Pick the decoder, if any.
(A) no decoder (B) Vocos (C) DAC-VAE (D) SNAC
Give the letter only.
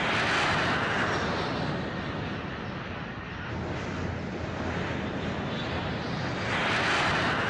A